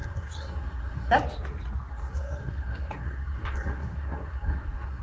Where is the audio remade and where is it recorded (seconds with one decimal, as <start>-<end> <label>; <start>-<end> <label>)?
0.0-1.1 remade; 1.1-1.9 recorded; 1.9-5.0 remade